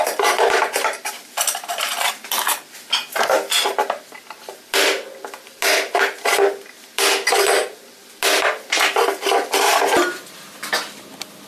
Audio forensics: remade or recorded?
recorded